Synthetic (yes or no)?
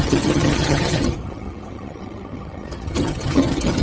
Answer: yes